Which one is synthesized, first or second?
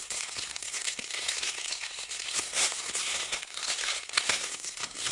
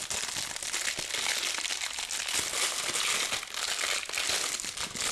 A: first